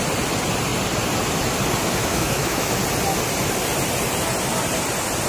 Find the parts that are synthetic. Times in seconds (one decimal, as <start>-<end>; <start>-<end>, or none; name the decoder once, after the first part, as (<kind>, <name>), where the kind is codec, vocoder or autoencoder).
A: 2.0-2.8 (autoencoder, DAC-VAE)